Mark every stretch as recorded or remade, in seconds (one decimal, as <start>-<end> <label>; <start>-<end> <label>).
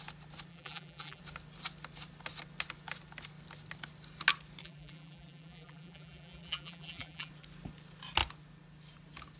0.0-0.5 recorded; 0.5-1.2 remade; 1.2-4.6 recorded; 4.6-7.3 remade; 7.3-9.4 recorded